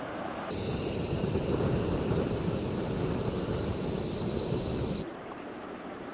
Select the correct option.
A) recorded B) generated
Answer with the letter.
B